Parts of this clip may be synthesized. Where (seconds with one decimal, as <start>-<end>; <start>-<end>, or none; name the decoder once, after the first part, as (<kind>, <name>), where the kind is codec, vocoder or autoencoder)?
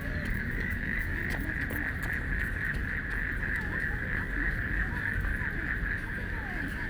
0.0-1.2 (codec, DAC); 2.4-2.8; 3.4-5.3; 5.9-6.9